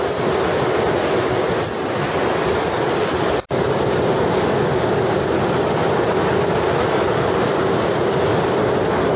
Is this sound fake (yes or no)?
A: no